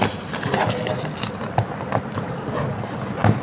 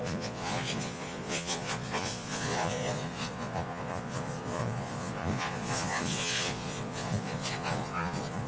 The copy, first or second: second